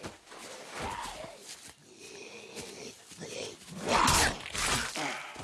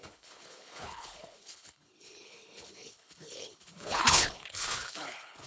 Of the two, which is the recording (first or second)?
first